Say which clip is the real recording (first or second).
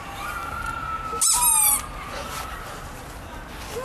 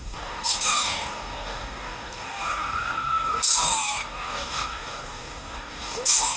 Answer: first